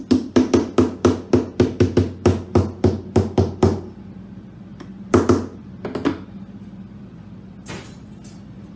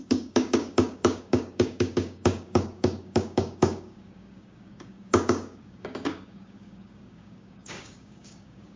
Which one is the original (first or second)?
first